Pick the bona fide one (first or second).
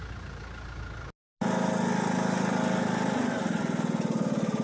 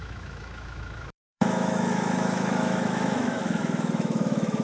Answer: first